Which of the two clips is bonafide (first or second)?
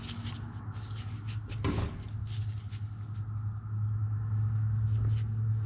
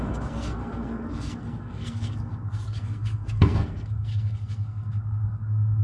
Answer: first